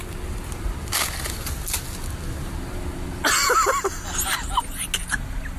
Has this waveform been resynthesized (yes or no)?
no